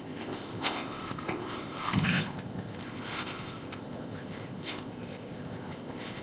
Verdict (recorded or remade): remade